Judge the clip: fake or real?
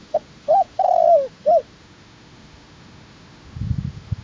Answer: fake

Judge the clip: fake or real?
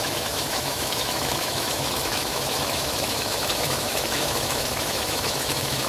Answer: fake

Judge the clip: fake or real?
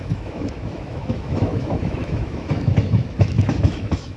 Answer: fake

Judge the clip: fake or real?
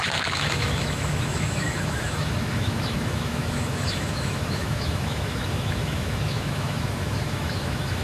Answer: fake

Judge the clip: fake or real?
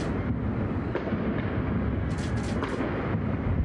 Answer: real